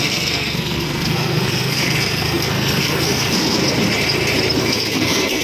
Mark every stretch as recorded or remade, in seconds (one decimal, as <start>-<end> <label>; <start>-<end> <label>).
0.0-3.6 remade; 3.6-4.6 recorded; 4.6-5.4 remade